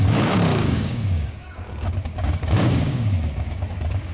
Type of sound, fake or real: fake